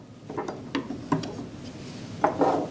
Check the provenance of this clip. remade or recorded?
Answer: recorded